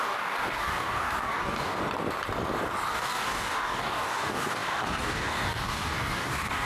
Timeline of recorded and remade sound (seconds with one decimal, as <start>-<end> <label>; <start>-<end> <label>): 0.0-1.8 remade; 1.8-2.9 recorded; 2.9-6.6 remade